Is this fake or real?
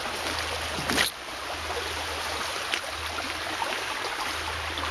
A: real